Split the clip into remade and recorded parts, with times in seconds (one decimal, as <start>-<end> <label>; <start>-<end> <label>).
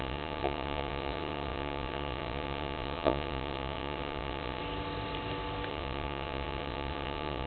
0.0-4.6 remade; 4.6-5.7 recorded; 5.7-7.5 remade